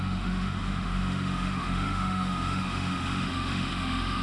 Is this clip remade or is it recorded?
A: remade